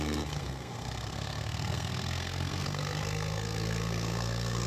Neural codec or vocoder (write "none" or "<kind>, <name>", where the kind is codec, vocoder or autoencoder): codec, SNAC